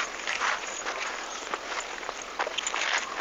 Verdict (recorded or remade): recorded